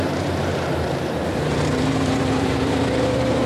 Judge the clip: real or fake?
fake